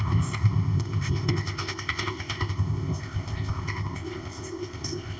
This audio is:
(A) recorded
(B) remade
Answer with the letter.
B